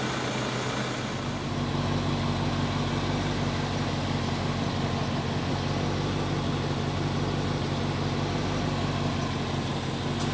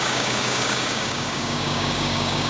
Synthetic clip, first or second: second